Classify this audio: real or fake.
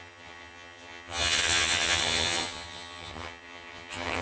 fake